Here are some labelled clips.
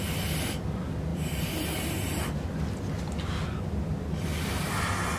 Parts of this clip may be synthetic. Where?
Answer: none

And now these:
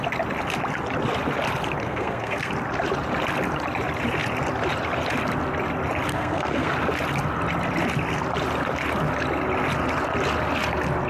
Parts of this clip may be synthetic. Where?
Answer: 1.8-2.5 (codec, SNAC); 6.1-6.7

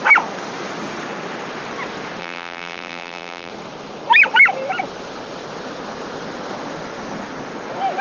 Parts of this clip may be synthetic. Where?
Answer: 2.2-3.5 (vocoder, BigVGAN v2)

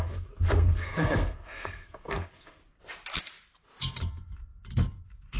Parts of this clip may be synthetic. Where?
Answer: 0.0-2.6 (codec, SNAC)